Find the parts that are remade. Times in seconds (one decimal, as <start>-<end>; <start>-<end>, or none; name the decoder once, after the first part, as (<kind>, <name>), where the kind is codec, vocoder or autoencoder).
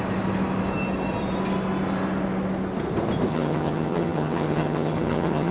3.3-5.5 (vocoder, HiFi-GAN)